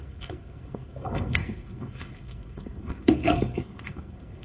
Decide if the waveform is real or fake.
fake